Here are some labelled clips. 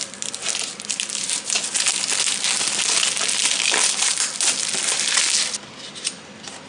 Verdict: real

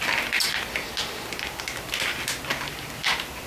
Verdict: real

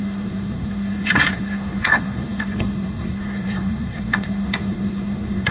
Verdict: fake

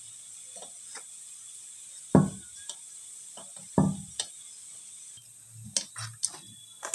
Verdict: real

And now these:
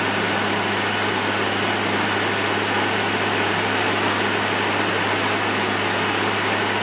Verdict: real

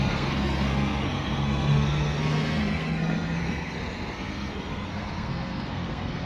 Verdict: fake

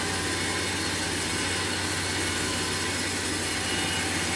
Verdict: real